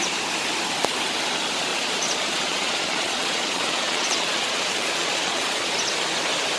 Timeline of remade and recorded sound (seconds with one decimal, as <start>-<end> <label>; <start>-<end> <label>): 0.0-1.7 recorded; 1.7-5.7 remade; 5.7-6.6 recorded